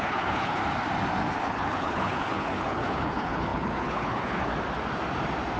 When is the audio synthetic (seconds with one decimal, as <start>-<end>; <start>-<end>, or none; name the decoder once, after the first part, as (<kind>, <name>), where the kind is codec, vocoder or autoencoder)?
0.0-0.6 (codec, HILCodec); 1.5-4.5